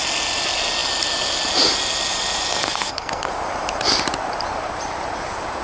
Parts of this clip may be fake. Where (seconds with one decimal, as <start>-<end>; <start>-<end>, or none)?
2.6-3.3